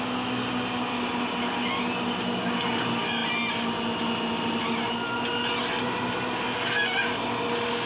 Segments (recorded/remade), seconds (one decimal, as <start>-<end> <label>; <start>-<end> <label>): 0.0-7.9 recorded